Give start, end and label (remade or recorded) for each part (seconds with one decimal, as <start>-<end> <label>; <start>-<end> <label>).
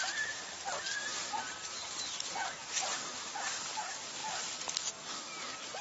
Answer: 0.0-5.8 recorded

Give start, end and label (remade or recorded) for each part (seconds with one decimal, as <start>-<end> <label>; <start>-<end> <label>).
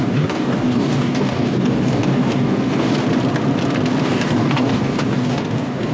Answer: 0.0-2.9 remade; 2.9-4.0 recorded; 4.0-5.9 remade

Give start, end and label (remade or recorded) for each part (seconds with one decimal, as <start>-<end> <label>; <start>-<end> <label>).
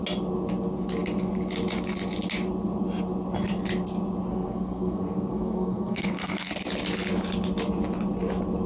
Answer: 0.0-4.3 recorded; 4.3-6.5 remade; 6.5-8.7 recorded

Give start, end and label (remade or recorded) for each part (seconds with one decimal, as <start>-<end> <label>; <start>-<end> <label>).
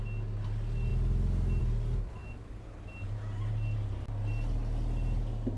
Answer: 0.0-5.6 recorded